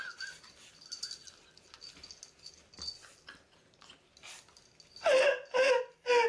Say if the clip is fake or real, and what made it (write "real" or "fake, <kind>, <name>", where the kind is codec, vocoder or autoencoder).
real